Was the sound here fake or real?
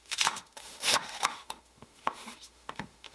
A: fake